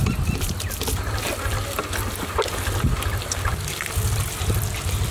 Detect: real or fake real